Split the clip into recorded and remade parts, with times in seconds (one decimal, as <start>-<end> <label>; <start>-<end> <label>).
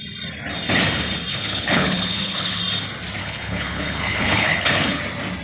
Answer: 0.0-1.3 recorded; 1.3-2.6 remade; 2.6-3.2 recorded; 3.2-5.0 remade; 5.0-5.4 recorded